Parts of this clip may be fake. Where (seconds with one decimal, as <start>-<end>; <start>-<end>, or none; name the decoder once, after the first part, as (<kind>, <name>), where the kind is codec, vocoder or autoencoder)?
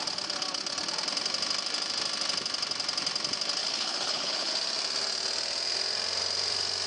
3.6-4.5 (codec, HILCodec)